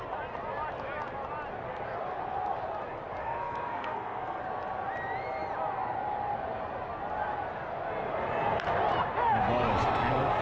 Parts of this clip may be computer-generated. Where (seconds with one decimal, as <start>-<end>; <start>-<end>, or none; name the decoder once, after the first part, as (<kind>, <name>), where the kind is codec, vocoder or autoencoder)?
3.2-4.4 (codec, SNAC)